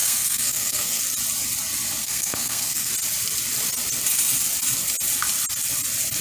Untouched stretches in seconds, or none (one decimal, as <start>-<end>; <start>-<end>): 1.0-2.0; 2.9-6.2